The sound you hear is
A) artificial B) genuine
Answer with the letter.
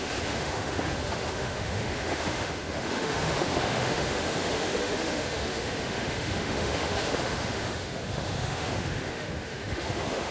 A